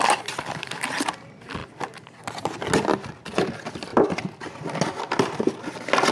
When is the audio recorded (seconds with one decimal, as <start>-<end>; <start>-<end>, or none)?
0.0-6.1